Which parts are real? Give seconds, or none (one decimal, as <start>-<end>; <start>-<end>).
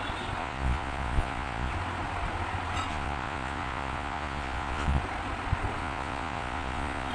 0.0-0.4; 1.7-2.9; 5.0-5.8